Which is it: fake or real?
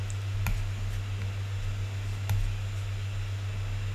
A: real